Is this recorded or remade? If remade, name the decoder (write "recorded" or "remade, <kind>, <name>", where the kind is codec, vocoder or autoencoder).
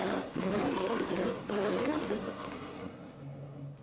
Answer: remade, codec, SNAC